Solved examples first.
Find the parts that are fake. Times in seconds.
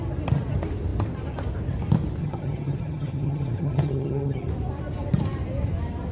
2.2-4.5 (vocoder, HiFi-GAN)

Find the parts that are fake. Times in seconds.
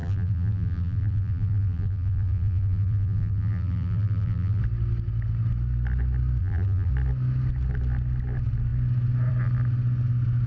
0.0-4.6 (vocoder, BigVGAN v2); 6.4-6.9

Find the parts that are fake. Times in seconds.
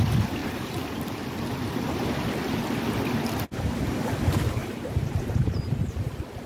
4.6-6.1 (vocoder, BigVGAN v2)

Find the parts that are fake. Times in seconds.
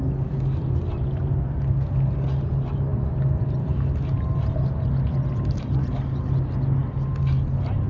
none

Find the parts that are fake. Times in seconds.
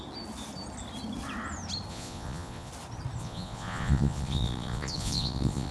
1.9-2.7 (vocoder, Vocos); 3.2-5.7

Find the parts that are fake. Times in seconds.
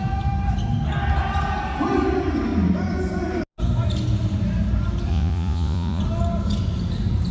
5.1-6.0 (vocoder, Vocos)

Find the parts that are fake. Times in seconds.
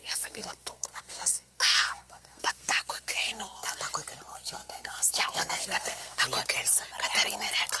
0.0-3.8 (codec, SNAC); 4.3-6.2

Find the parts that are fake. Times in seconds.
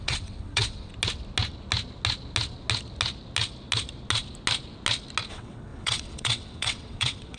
0.0-0.9 (vocoder, WaveNeXt); 5.3-7.4